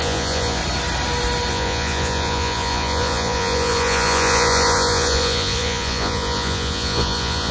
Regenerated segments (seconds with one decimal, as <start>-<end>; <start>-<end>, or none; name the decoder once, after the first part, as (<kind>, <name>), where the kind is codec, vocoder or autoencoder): 0.0-0.6 (vocoder, Vocos); 1.5-7.5

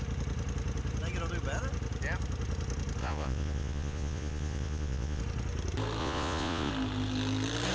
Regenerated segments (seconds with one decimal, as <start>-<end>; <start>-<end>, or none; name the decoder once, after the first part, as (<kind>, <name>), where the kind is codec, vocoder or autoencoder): 3.0-5.2 (vocoder, Vocos); 6.0-6.7

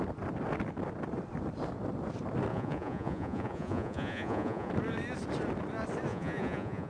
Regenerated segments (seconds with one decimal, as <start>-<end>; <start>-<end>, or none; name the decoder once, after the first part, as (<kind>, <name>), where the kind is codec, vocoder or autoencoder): 2.5-4.7 (vocoder, Vocos); 6.1-6.9

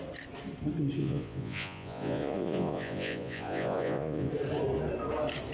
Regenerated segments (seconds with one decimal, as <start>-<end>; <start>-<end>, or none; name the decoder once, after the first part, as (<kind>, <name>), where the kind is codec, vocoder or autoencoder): 1.0-4.3 (vocoder, Vocos)